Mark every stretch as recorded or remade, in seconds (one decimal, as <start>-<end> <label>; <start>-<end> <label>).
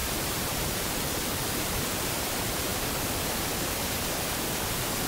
0.0-2.3 remade; 2.3-5.1 recorded